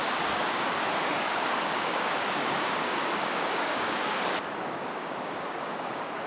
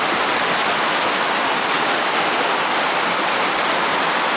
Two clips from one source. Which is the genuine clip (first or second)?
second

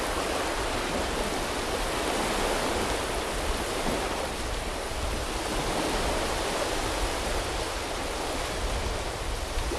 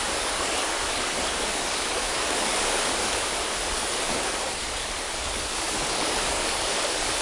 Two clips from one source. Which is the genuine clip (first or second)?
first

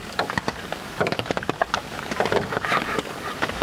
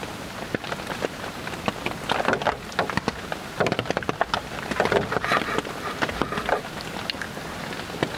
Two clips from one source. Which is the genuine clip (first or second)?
second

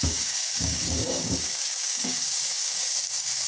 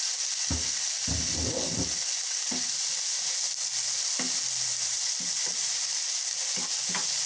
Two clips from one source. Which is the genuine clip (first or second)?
second